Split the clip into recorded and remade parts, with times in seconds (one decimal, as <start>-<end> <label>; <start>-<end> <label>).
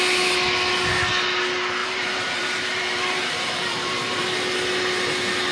0.0-1.8 recorded; 1.8-4.2 remade; 4.2-5.5 recorded